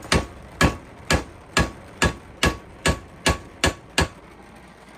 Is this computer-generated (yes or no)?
no